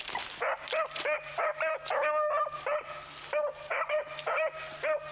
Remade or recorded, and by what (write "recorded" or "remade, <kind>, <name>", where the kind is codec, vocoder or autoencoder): recorded